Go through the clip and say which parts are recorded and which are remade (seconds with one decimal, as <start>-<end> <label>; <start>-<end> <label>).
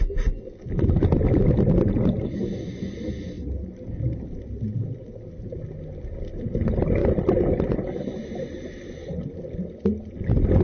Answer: 0.0-10.6 recorded